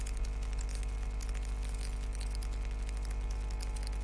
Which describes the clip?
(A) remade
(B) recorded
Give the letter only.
B